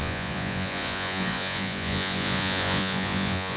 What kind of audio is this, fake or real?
fake